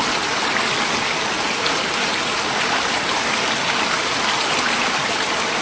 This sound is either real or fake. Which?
real